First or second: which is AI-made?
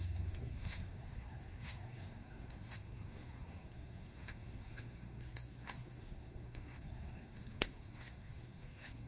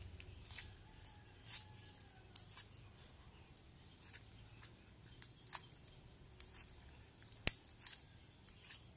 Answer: first